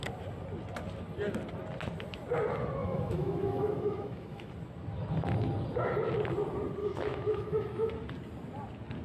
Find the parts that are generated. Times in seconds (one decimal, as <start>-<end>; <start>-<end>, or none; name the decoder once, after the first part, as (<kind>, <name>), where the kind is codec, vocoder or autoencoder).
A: 2.8-4.5 (autoencoder, DAC-VAE); 6.8-7.9